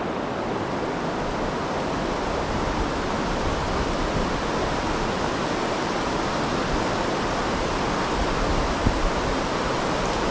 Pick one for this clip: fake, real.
real